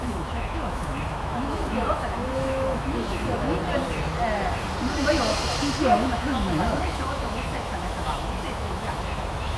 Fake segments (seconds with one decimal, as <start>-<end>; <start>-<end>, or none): 0.0-3.6; 5.8-9.6